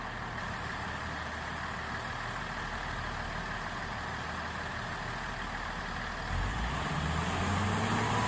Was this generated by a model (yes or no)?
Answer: no